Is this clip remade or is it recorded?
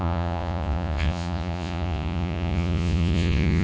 remade